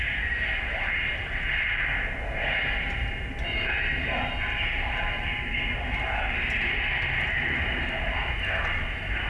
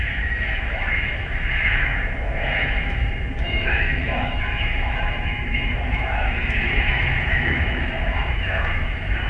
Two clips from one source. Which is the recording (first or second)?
first